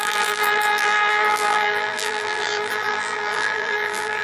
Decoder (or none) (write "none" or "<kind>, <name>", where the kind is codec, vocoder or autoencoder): vocoder, BigVGAN v2